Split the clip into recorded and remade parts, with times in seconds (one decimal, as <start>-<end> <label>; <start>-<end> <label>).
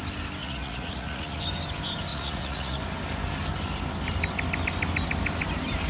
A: 0.0-0.4 recorded; 0.4-1.4 remade; 1.4-2.1 recorded; 2.1-2.8 remade; 2.8-5.9 recorded